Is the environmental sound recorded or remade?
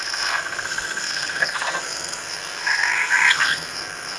remade